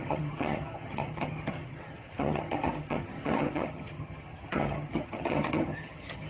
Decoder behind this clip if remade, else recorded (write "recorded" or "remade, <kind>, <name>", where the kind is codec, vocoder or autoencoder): remade, vocoder, HiFi-GAN